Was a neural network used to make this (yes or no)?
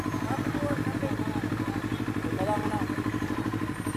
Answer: no